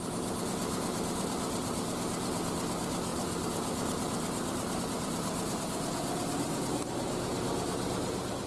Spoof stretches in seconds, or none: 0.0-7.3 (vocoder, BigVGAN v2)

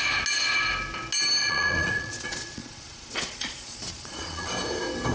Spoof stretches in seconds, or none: 1.4-4.5 (vocoder, Vocos)

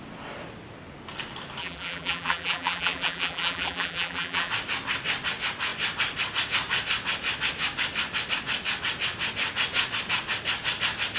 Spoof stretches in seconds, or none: 1.6-4.5 (vocoder, BigVGAN v2)

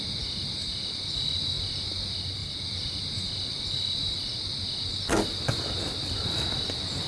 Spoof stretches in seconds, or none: none

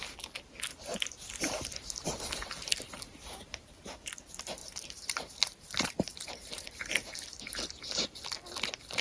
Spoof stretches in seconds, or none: 3.1-3.8 (vocoder, BigVGAN v2); 4.6-6.7